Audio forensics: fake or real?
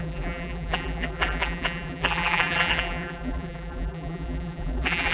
fake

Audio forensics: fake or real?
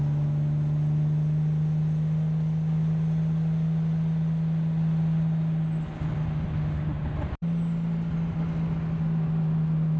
real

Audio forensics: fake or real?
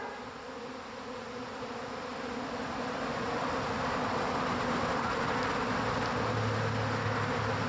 real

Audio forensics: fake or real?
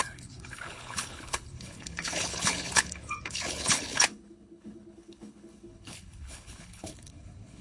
fake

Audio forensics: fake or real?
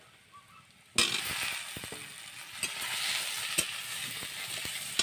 real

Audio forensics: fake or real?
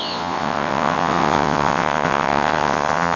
fake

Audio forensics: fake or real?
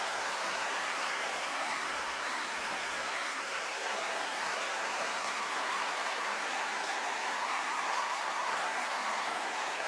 fake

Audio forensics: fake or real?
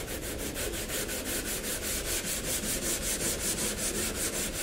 real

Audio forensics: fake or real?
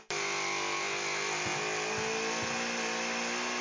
real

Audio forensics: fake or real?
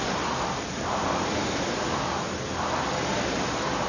real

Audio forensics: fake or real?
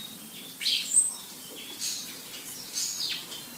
fake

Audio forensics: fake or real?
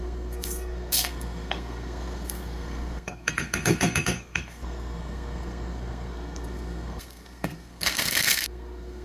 fake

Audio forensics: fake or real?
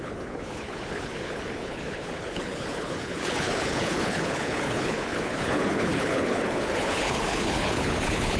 fake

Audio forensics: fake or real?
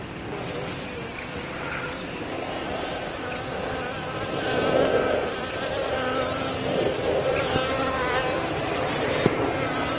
real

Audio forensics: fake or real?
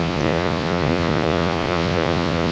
fake